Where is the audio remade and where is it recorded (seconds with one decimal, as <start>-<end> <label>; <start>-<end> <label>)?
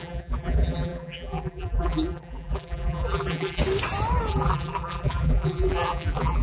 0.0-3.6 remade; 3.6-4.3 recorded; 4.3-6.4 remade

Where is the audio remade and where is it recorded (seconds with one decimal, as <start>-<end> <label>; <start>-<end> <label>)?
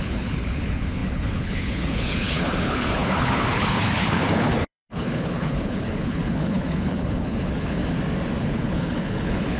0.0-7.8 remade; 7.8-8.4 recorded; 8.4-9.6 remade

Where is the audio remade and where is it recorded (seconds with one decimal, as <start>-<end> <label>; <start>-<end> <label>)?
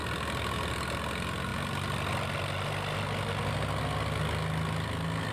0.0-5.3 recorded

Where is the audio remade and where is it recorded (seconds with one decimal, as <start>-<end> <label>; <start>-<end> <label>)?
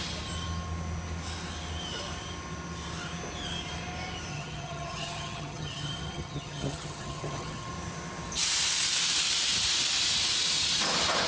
0.0-4.3 recorded; 4.3-7.7 remade; 7.7-11.3 recorded